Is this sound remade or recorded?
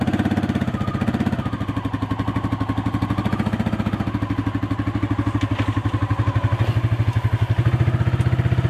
recorded